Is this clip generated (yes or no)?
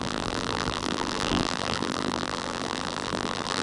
yes